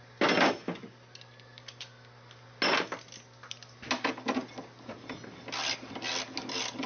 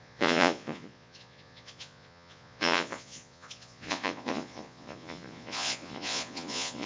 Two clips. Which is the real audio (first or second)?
first